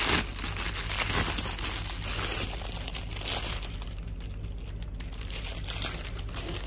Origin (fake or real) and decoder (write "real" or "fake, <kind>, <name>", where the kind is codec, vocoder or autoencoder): real